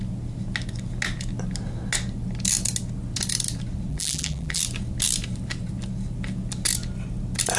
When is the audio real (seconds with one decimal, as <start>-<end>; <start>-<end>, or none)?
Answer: 0.0-3.9; 4.6-7.6

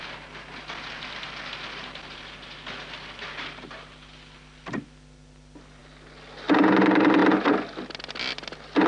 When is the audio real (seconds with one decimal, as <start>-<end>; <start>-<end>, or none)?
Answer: 0.0-8.9

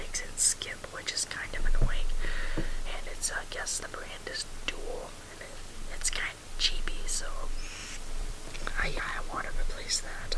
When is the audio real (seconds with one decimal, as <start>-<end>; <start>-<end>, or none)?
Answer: 0.0-7.8; 9.0-10.4